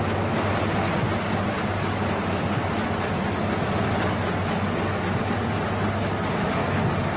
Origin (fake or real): real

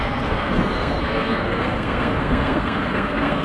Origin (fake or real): fake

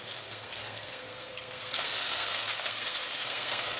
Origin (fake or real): fake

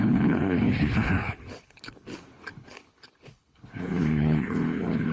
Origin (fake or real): fake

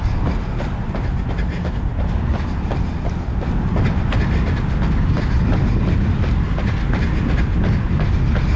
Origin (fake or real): real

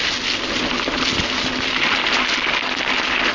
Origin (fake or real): real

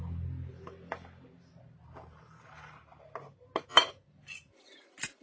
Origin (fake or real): real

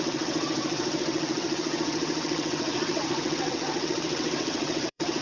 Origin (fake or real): fake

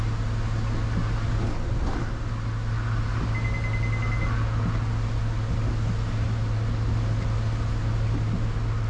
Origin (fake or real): real